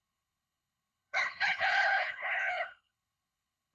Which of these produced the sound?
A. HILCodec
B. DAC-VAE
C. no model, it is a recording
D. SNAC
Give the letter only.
A